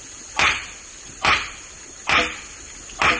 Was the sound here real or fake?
real